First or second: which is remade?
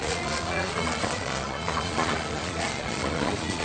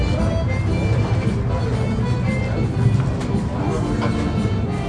first